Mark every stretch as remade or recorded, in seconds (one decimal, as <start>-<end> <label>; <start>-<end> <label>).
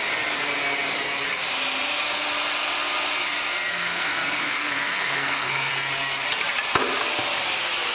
0.0-3.7 recorded; 3.7-5.7 remade; 5.7-7.9 recorded